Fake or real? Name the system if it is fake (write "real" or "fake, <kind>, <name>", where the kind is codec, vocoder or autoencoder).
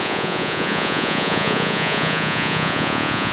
fake, vocoder, Vocos